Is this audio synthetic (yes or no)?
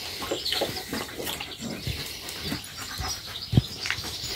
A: no